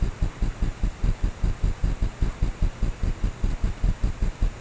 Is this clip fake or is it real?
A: real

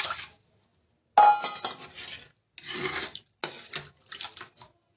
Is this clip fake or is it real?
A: real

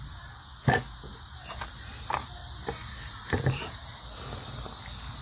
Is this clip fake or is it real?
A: real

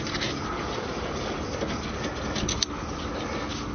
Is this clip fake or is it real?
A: real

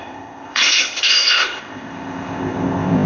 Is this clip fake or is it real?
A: fake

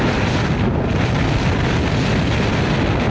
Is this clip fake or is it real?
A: real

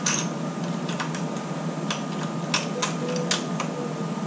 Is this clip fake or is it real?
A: real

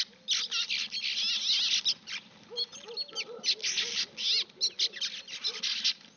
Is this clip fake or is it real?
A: real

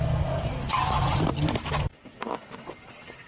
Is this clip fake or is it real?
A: real